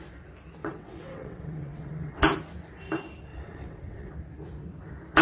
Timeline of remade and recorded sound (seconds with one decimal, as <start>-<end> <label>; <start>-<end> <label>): 0.0-0.6 recorded; 0.6-2.2 remade; 2.2-3.3 recorded; 3.3-4.1 remade; 4.1-5.2 recorded